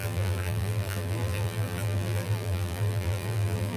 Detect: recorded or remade remade